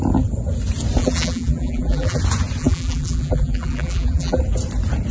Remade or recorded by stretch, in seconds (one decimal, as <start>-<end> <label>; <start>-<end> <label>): 0.0-1.0 recorded; 1.0-2.2 remade; 2.2-2.6 recorded; 2.6-4.4 remade; 4.4-5.1 recorded

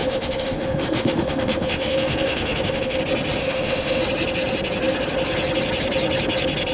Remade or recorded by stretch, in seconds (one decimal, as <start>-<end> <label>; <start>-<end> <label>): 0.0-3.0 remade; 3.0-3.4 recorded; 3.4-4.0 remade; 4.0-6.7 recorded

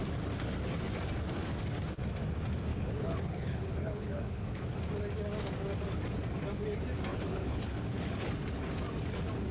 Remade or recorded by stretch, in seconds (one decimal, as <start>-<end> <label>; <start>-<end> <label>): 0.0-2.7 recorded; 2.7-4.8 remade; 4.8-7.1 recorded; 7.1-8.3 remade; 8.3-9.5 recorded

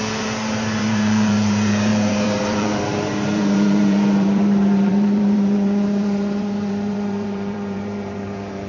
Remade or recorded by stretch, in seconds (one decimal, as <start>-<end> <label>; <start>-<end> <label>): 0.0-8.7 remade

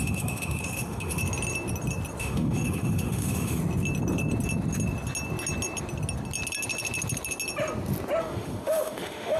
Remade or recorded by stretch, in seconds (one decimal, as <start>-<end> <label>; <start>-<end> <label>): 0.0-1.2 remade; 1.2-2.2 recorded; 2.2-3.6 remade; 3.6-8.2 recorded; 8.2-9.4 remade

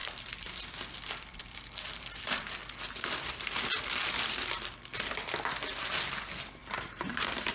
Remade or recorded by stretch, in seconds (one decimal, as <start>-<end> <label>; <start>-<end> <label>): 0.0-7.5 remade

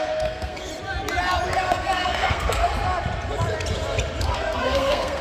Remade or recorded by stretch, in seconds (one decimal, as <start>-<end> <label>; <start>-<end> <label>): 0.0-0.7 remade; 0.7-1.6 recorded; 1.6-2.6 remade; 2.6-4.2 recorded; 4.2-5.2 remade